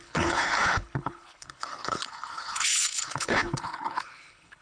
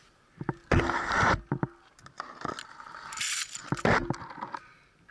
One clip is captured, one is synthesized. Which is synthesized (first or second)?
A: first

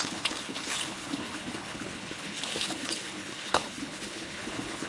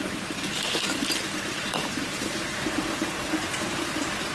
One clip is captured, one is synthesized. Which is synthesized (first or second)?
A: first